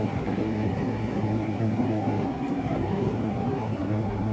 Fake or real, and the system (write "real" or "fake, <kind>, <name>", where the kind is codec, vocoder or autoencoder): fake, codec, SNAC